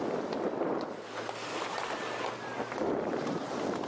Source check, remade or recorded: recorded